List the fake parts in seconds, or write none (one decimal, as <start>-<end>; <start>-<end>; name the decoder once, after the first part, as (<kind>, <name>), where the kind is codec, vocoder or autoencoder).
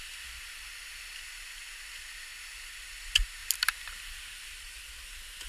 none